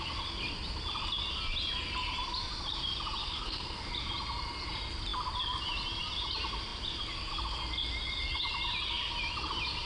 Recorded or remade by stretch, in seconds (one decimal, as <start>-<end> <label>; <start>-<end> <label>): 0.0-3.2 recorded; 3.2-3.9 remade; 3.9-9.9 recorded